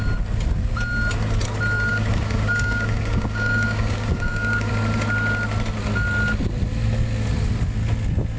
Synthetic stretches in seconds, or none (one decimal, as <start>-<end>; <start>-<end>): 1.9-4.7